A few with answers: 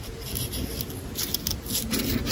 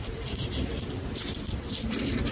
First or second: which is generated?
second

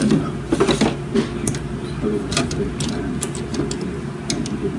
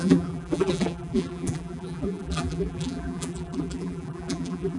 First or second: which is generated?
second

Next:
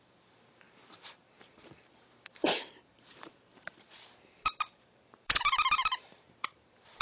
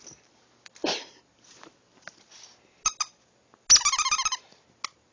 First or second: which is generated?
first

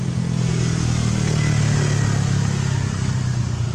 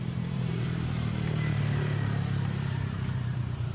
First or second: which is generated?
second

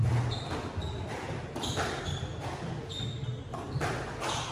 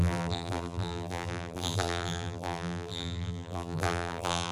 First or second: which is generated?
second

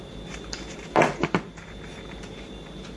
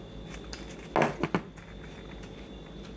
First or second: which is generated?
first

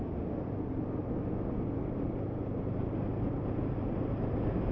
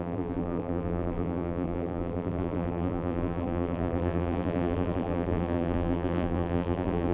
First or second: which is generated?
second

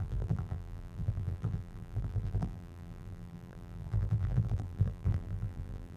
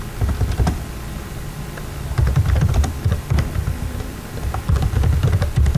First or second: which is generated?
first